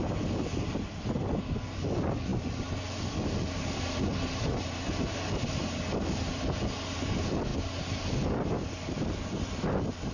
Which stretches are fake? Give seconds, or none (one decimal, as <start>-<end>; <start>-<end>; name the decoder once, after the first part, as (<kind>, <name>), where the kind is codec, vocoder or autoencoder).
none

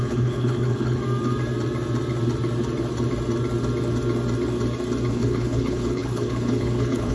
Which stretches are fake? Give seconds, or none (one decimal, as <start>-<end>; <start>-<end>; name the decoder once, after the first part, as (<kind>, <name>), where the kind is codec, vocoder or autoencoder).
0.0-1.0 (codec, HILCodec); 5.1-7.1